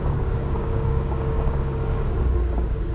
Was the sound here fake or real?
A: fake